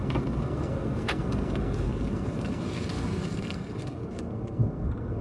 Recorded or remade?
remade